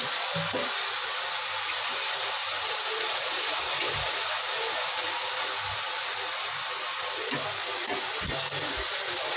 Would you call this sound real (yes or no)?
yes